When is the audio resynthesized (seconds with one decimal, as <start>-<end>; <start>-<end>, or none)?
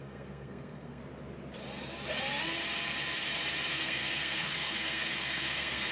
0.0-1.0; 3.7-5.9